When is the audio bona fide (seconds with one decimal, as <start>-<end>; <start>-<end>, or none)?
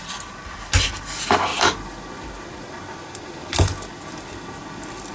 0.0-5.1